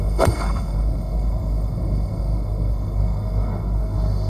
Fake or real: fake